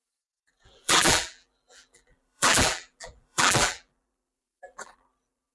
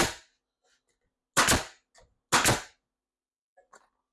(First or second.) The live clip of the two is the second